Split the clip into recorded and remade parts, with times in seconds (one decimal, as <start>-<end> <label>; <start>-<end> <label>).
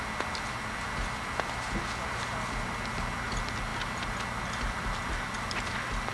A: 0.0-6.1 recorded